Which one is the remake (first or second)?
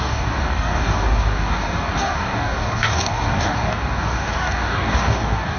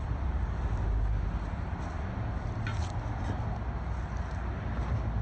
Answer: first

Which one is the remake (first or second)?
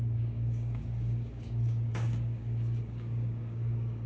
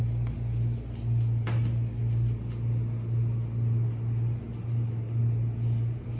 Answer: first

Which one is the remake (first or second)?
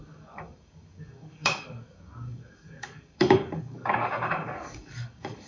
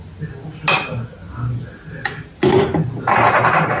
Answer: first